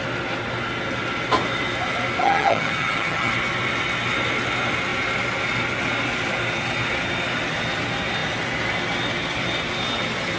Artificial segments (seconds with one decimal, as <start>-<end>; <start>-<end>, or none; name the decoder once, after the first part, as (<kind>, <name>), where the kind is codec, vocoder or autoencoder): 2.2-3.3 (vocoder, HiFi-GAN)